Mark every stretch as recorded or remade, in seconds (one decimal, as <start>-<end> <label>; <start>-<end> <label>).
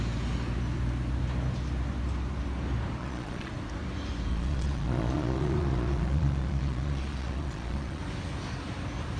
0.0-3.0 recorded; 3.0-3.5 remade; 3.5-4.3 recorded; 4.3-8.0 remade; 8.0-9.2 recorded